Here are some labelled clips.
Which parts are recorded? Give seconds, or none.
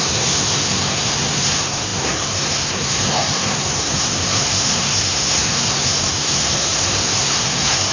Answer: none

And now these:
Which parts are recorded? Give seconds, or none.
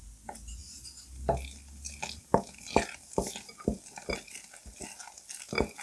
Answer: 0.0-5.8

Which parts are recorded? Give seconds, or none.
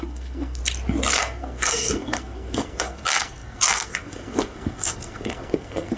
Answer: 0.6-1.1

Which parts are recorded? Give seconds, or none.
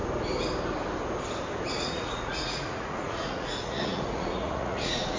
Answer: 0.0-1.7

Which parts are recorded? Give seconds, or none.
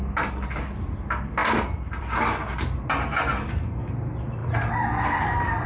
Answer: 0.0-3.4; 3.9-5.7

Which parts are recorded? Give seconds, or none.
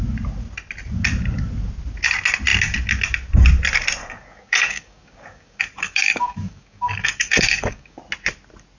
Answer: 0.0-4.0; 8.0-8.8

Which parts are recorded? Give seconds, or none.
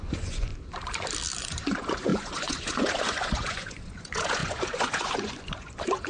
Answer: 0.5-1.4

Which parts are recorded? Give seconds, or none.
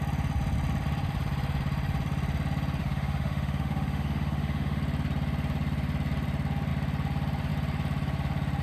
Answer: 0.0-2.8; 4.8-8.6